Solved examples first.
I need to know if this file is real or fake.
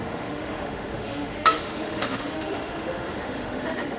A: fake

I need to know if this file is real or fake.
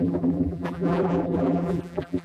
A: fake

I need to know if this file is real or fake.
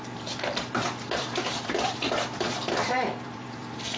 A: fake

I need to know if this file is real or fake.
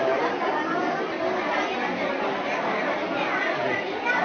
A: real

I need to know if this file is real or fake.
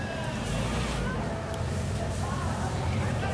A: fake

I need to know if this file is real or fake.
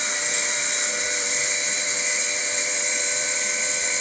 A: fake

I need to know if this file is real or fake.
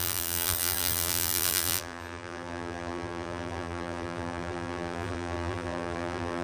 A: fake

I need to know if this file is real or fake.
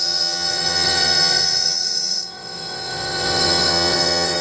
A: fake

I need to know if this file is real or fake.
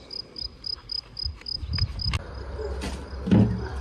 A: real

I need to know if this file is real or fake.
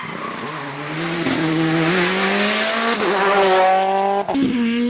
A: real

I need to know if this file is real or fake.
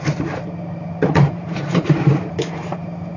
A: fake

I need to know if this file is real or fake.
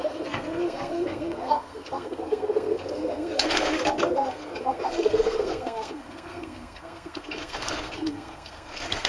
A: fake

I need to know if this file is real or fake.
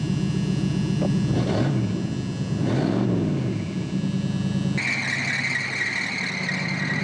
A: real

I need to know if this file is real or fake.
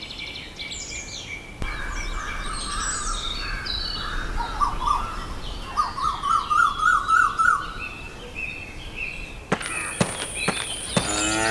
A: real